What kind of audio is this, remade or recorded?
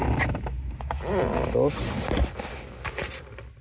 recorded